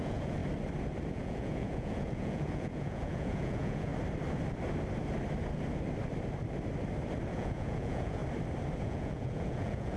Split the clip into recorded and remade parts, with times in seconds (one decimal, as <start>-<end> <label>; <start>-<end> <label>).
0.0-0.4 remade; 0.4-1.1 recorded; 1.1-3.9 remade; 3.9-7.3 recorded; 7.3-8.2 remade; 8.2-8.8 recorded; 8.8-10.0 remade